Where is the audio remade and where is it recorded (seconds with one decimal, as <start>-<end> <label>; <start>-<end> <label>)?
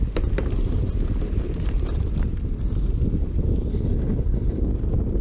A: 0.0-3.7 recorded; 3.7-4.6 remade; 4.6-5.2 recorded